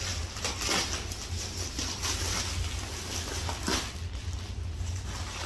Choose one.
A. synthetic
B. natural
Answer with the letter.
B